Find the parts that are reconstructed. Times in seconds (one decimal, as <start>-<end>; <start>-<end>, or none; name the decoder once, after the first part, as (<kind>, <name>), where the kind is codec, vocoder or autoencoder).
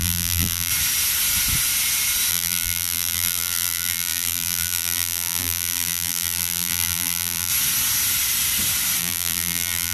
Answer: 0.0-0.7 (vocoder, BigVGAN v2); 2.3-7.5; 9.0-9.9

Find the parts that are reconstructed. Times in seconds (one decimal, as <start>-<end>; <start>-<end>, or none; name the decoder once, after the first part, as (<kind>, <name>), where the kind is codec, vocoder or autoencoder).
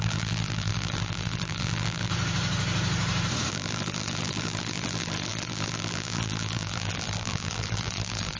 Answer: 0.0-2.1 (vocoder, BigVGAN v2); 3.5-8.4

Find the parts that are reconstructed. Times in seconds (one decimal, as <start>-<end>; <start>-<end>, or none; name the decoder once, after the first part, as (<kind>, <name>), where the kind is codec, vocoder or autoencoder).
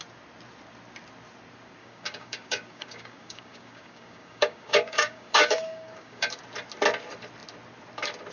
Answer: 1.8-6.4 (codec, DAC)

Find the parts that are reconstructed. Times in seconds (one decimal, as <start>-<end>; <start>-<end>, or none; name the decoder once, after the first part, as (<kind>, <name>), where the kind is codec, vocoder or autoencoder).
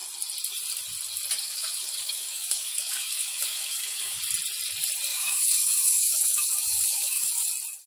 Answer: 1.4-4.2 (codec, DAC); 5.1-7.5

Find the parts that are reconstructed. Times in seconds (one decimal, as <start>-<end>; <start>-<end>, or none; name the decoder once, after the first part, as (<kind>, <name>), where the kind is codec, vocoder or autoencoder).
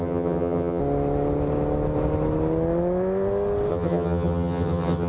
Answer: 0.0-0.8 (vocoder, HiFi-GAN); 3.7-5.1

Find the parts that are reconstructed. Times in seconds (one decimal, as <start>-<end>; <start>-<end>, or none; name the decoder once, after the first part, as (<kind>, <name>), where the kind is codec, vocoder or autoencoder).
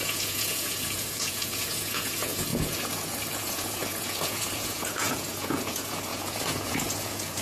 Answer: 0.0-7.4 (vocoder, Vocos)